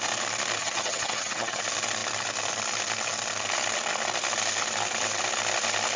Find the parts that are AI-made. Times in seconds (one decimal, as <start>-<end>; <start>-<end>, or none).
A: 0.6-1.6